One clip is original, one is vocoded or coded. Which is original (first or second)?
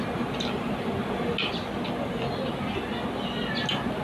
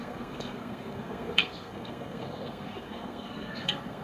first